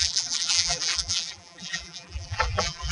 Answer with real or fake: fake